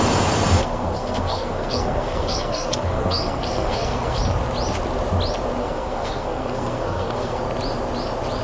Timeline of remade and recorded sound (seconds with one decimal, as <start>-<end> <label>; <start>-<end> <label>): 0.0-0.6 recorded; 0.6-4.2 remade; 4.2-5.6 recorded; 5.6-7.4 remade; 7.4-8.4 recorded